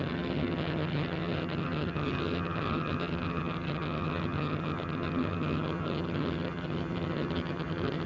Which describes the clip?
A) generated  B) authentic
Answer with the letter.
A